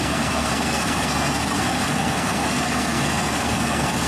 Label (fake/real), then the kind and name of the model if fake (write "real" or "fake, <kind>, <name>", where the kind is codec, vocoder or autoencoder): fake, codec, SNAC